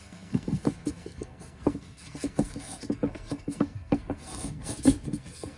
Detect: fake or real fake